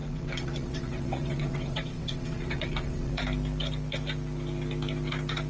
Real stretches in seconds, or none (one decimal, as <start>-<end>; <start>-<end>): 3.1-5.5